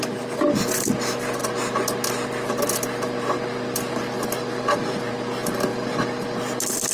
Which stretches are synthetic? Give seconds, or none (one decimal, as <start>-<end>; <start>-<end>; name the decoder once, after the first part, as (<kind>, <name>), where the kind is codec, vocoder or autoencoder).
none